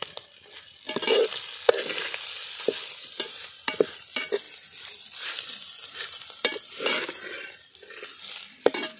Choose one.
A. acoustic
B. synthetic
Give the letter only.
A